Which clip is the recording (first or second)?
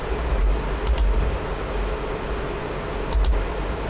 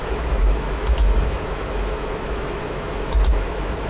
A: first